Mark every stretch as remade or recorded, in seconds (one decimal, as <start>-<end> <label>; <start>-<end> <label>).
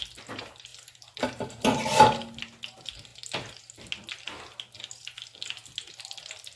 0.0-0.7 recorded; 0.7-1.5 remade; 1.5-6.6 recorded